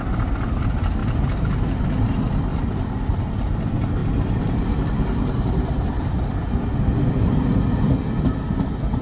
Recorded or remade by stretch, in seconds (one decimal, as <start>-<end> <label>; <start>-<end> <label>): 0.0-2.5 recorded; 2.5-3.3 remade; 3.3-9.0 recorded